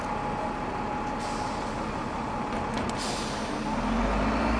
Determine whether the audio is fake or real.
real